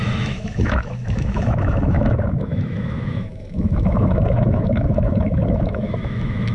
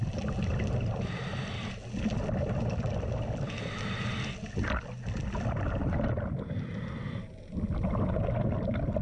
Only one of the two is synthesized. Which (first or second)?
first